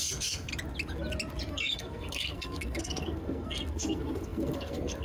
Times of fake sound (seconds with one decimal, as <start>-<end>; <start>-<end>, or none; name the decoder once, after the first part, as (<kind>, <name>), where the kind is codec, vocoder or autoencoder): 0.0-0.5 (codec, SNAC); 1.5-5.0